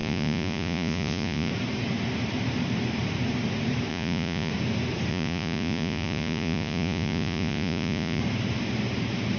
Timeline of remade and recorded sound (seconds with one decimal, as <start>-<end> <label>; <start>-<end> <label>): 0.0-1.5 remade; 1.5-3.9 recorded; 3.9-4.5 remade; 4.5-5.1 recorded; 5.1-8.2 remade; 8.2-9.4 recorded